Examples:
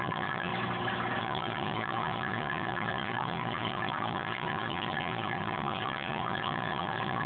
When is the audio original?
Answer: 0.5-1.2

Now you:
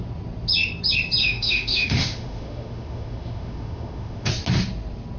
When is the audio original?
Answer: 0.0-1.2; 4.3-5.2

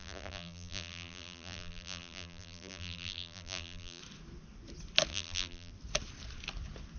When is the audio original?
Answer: 4.0-5.1; 5.7-7.0

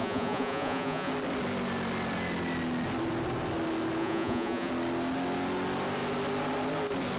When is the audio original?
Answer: 1.1-4.0; 4.7-7.2

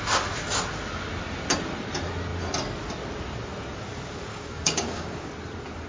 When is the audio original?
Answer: 0.0-4.3; 5.3-5.9

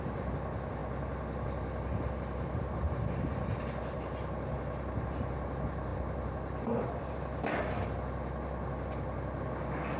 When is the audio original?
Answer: 0.0-10.0

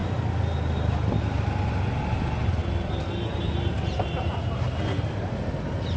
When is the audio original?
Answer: 0.0-6.0

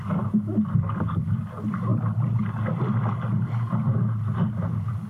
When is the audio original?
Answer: 0.0-5.1